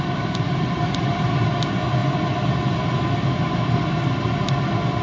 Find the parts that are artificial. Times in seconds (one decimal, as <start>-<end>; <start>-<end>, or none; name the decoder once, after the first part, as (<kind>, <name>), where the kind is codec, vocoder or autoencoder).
none